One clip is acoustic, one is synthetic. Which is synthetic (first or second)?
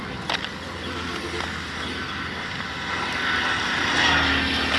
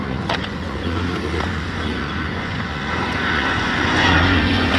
second